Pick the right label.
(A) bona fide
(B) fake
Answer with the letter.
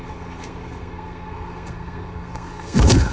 B